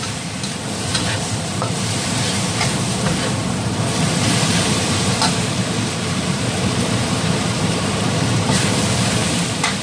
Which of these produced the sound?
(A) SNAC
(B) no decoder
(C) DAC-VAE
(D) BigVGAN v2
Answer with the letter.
D